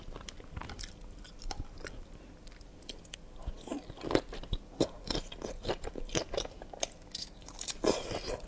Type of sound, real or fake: real